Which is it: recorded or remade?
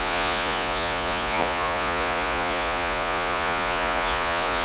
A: remade